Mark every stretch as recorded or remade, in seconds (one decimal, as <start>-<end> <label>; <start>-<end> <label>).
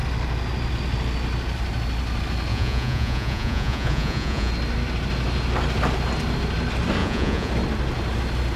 0.0-2.5 recorded; 2.5-4.5 remade; 4.5-7.0 recorded; 7.0-7.5 remade; 7.5-8.6 recorded